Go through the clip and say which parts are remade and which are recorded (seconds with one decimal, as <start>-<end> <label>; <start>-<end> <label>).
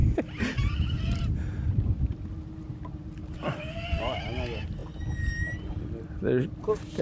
0.0-7.0 recorded